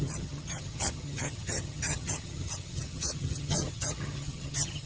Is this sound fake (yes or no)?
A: yes